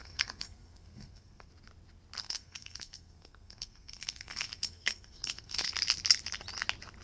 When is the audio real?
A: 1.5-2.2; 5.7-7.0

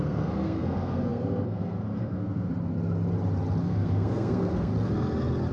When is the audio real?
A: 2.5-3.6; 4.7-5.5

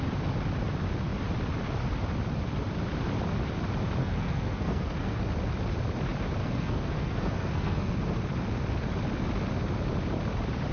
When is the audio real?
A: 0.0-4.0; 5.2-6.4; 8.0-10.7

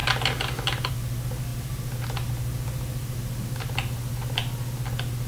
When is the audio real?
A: 0.0-5.3